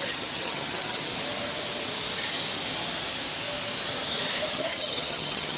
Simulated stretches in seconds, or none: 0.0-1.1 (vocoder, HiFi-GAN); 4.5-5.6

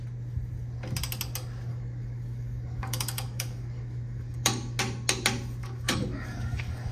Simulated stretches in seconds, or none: 1.7-4.8 (codec, DAC); 5.6-6.9

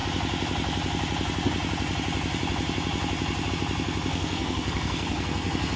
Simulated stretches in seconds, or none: 4.1-5.8 (codec, SNAC)

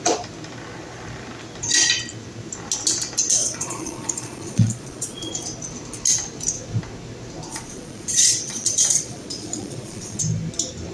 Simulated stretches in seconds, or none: 3.4-5.3 (vocoder, Vocos); 7.5-10.2

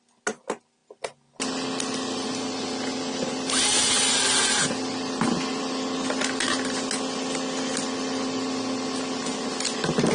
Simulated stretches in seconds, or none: none

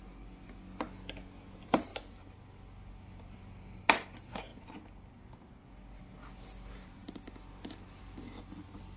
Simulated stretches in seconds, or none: none